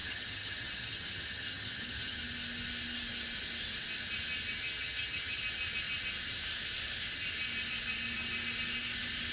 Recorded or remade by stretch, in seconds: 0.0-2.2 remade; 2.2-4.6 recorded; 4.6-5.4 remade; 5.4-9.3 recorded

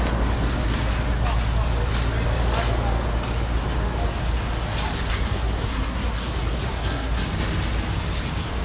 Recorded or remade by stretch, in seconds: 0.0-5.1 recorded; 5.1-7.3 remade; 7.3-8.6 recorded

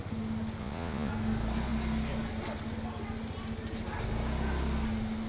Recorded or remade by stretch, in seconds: 0.0-0.6 recorded; 0.6-1.1 remade; 1.1-5.3 recorded